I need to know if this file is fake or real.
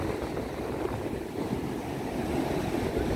real